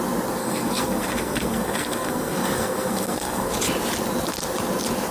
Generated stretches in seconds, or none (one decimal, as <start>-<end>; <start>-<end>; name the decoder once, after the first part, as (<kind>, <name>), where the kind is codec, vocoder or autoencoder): 0.4-3.5 (codec, SNAC)

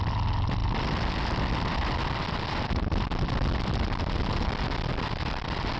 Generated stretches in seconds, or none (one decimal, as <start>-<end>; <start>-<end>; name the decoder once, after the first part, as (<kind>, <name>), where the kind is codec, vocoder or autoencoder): none

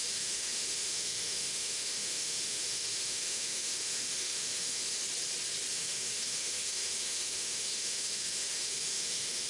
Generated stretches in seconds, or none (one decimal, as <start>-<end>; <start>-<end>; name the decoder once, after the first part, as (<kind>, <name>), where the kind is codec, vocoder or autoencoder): 0.0-5.0 (autoencoder, DAC-VAE); 5.7-9.5

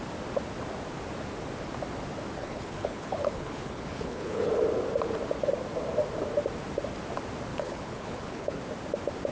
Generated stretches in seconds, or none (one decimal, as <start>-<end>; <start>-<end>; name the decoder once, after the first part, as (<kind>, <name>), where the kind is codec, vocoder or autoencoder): 2.4-4.5 (codec, HILCodec); 7.5-8.6

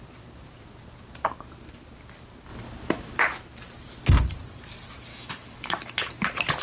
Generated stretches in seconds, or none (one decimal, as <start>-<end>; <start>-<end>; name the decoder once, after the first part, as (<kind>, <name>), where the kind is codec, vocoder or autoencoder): 5.1-6.1 (autoencoder, DAC-VAE)

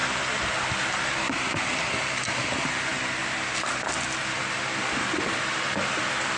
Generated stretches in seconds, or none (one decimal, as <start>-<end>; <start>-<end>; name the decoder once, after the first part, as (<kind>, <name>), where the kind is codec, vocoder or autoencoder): 0.0-1.1 (vocoder, BigVGAN v2)

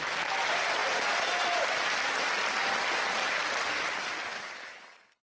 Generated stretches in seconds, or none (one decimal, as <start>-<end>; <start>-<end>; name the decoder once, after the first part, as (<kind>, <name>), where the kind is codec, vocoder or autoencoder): 4.3-5.2 (codec, HILCodec)